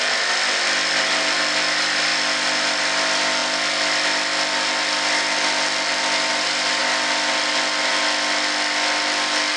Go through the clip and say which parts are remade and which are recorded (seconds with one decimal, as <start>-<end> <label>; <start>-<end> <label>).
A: 0.0-9.6 recorded